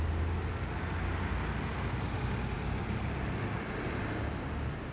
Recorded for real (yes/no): yes